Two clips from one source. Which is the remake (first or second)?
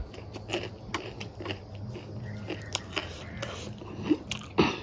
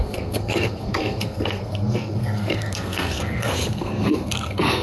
second